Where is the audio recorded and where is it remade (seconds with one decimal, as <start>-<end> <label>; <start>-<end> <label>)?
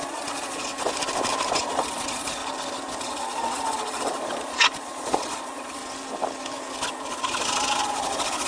0.0-0.7 remade; 0.7-1.5 recorded; 1.5-2.4 remade; 2.4-3.0 recorded; 3.0-5.8 remade; 5.8-7.0 recorded; 7.0-8.5 remade